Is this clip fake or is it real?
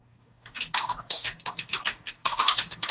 fake